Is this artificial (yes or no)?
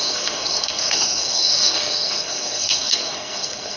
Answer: yes